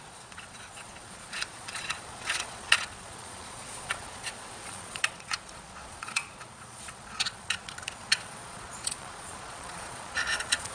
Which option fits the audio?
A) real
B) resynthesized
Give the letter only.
B